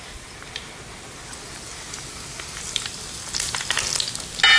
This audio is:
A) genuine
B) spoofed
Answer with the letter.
A